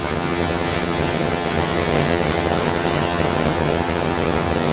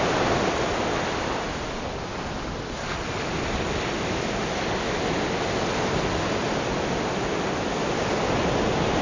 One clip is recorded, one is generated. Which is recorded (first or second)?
second